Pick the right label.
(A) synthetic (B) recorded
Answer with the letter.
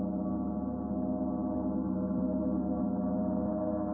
B